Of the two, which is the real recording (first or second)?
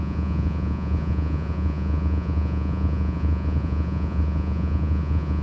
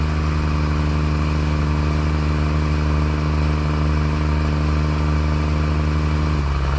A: second